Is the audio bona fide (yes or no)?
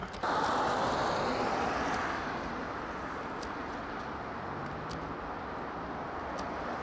yes